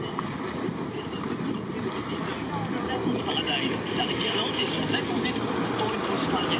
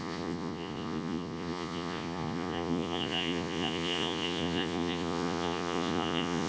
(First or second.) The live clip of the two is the first